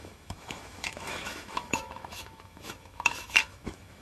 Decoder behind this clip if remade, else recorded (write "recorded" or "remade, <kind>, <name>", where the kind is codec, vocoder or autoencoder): remade, autoencoder, DAC-VAE